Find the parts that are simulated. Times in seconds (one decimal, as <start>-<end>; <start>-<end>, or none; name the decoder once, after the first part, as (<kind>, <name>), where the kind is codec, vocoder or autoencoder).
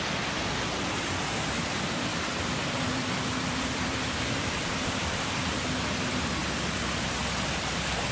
2.1-5.7 (vocoder, BigVGAN v2)